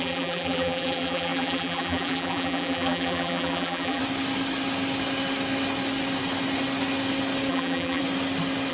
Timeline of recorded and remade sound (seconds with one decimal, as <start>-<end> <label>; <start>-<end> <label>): 0.0-4.0 remade; 4.0-7.5 recorded; 7.5-8.0 remade; 8.0-8.7 recorded